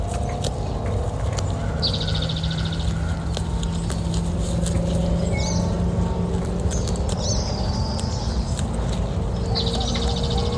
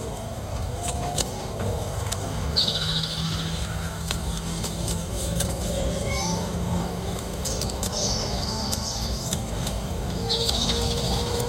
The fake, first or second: second